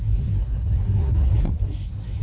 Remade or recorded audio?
remade